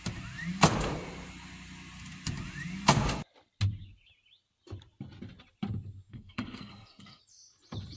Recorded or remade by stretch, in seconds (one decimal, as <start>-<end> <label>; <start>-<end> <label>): 0.0-6.1 recorded; 6.1-7.2 remade; 7.2-8.0 recorded